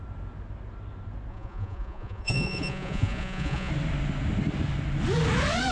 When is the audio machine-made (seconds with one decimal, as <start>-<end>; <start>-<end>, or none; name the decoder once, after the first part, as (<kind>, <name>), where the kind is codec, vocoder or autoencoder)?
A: 1.3-3.7 (vocoder, Vocos)